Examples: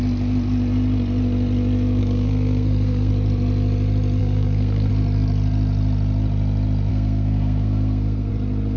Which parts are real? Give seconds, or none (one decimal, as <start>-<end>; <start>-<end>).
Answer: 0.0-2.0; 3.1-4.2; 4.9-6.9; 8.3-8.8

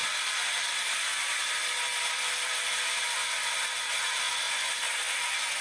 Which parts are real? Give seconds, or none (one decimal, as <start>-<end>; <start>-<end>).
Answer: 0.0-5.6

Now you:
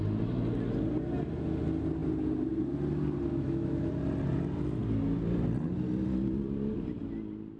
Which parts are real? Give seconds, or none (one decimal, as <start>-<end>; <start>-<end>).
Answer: 0.0-3.3; 3.9-7.6